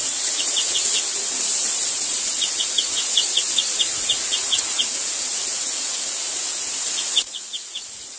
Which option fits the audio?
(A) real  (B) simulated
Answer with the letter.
B